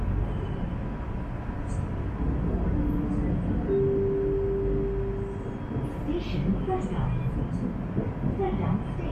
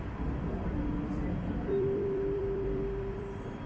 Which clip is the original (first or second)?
first